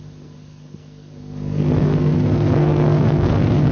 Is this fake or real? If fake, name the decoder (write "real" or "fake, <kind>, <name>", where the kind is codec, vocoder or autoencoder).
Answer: fake, codec, SNAC